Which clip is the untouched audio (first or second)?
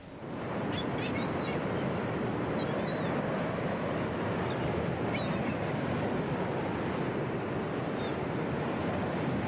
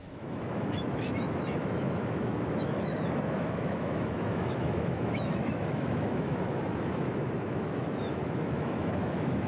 first